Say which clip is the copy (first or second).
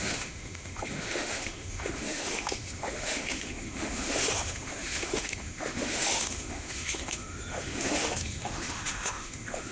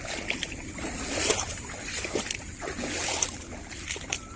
first